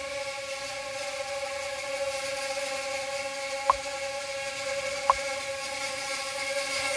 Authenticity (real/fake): real